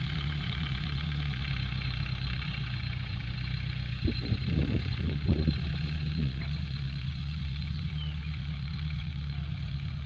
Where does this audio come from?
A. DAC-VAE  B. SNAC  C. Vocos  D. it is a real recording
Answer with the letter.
C